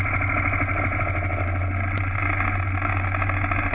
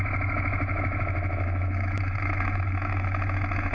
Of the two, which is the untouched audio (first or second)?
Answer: first